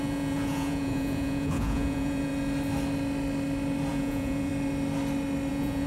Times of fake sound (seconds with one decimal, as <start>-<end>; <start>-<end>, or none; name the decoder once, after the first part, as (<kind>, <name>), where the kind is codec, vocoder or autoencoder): 0.0-2.3 (vocoder, Vocos); 3.9-4.5; 5.5-5.9